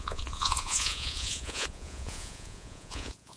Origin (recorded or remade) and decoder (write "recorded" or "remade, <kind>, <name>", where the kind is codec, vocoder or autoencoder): remade, vocoder, Vocos